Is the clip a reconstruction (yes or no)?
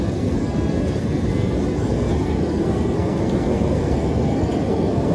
yes